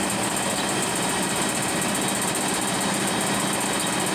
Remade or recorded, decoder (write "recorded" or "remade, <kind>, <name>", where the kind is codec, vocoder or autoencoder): recorded